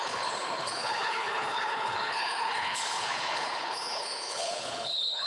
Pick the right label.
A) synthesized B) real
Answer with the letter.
A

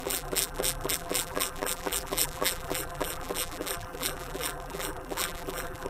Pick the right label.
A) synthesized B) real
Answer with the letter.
A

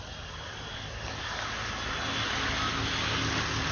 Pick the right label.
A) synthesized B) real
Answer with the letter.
B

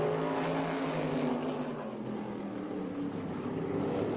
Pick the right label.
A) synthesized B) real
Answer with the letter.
B